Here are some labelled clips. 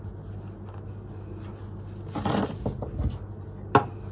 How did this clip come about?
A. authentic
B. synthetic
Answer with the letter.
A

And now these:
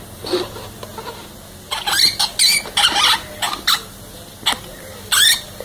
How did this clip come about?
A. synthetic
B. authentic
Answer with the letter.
B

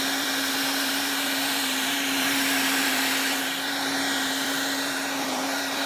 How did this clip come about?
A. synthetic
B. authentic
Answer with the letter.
A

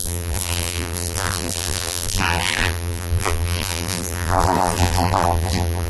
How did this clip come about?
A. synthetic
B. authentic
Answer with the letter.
A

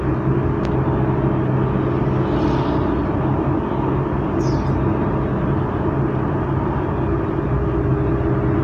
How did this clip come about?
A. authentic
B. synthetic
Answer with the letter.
A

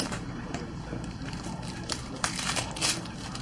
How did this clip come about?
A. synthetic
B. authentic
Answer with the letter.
A